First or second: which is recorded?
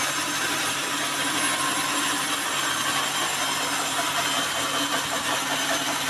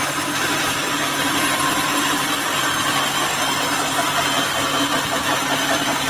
first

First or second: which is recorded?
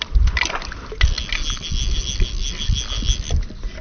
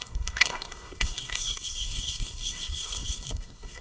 first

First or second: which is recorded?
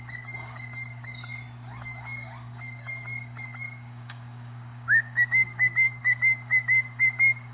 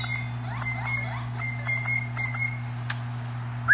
second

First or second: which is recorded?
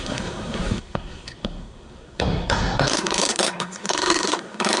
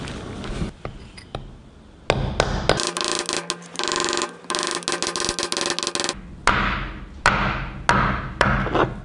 second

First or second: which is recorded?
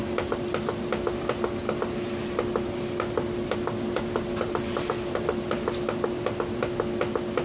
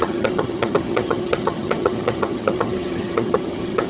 first